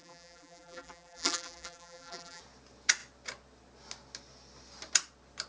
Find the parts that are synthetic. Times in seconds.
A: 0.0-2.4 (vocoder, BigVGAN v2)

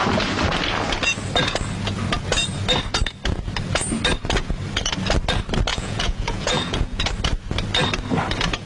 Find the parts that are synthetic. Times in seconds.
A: 5.7-7.0 (vocoder, Vocos)

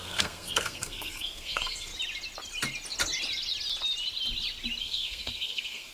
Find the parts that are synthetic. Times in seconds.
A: 0.0-1.9 (codec, SNAC); 4.8-5.9

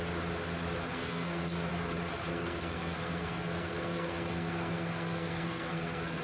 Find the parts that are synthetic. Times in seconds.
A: 0.9-1.7 (codec, SNAC); 2.3-6.2

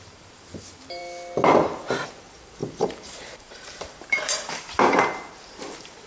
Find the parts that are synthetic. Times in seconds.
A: 0.0-1.0 (vocoder, BigVGAN v2); 2.2-6.1

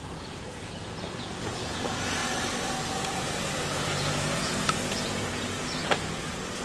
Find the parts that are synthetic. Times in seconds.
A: 0.0-2.2 (vocoder, Vocos); 2.8-6.6